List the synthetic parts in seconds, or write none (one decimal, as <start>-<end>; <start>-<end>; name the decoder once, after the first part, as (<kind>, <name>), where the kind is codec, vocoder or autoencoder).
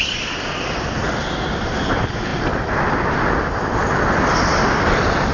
none